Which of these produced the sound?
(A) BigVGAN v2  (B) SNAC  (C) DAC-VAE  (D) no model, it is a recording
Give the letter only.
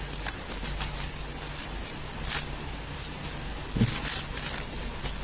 D